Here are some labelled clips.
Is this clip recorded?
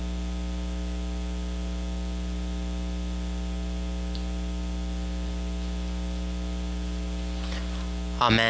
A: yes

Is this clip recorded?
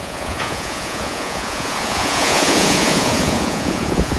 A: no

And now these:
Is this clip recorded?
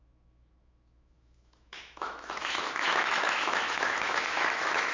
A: no